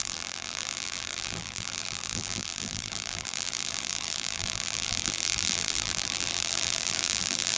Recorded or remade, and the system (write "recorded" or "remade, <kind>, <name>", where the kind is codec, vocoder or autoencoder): remade, vocoder, BigVGAN v2